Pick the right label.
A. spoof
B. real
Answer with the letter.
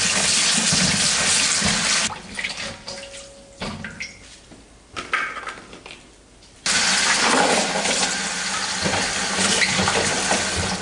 B